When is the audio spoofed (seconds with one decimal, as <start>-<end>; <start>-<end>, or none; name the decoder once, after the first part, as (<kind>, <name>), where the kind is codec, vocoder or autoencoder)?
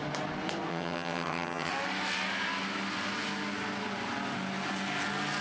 0.7-1.7 (vocoder, HiFi-GAN)